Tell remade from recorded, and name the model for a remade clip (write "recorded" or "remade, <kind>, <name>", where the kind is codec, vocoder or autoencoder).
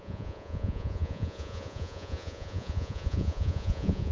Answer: remade, vocoder, Vocos